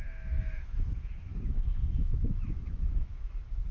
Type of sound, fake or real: fake